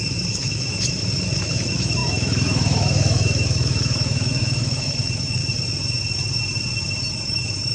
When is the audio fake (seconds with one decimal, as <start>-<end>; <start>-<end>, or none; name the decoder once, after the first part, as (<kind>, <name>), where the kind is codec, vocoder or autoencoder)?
0.0-5.4 (autoencoder, DAC-VAE); 7.1-7.7